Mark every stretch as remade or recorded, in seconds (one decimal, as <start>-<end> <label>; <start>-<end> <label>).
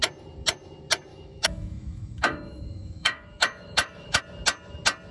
0.0-1.1 recorded; 1.1-4.2 remade; 4.2-5.1 recorded